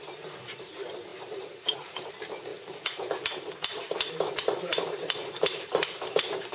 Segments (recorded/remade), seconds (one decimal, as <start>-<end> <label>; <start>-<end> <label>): 0.0-6.5 remade